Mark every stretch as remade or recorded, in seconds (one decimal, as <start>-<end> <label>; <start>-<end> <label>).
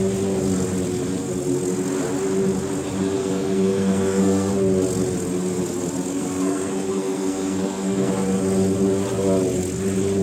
0.0-3.2 recorded; 3.2-4.5 remade; 4.5-6.1 recorded; 6.1-8.1 remade; 8.1-10.2 recorded